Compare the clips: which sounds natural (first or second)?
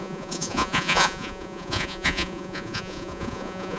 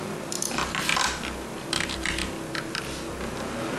second